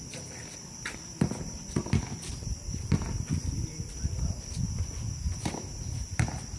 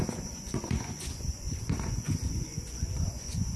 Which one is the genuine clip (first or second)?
first